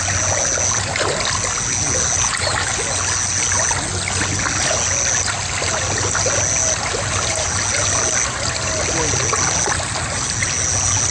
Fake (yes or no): no